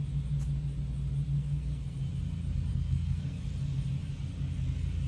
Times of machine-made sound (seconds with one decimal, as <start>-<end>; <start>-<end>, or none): 1.4-2.0; 2.7-3.4